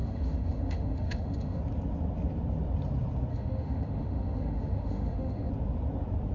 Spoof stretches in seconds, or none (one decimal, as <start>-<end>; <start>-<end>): 0.0-1.6; 3.3-5.5